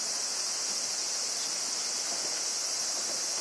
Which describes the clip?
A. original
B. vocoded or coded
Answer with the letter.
A